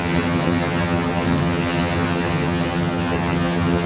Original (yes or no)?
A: no